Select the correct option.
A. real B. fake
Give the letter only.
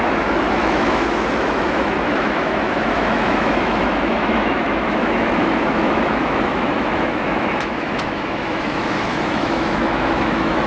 B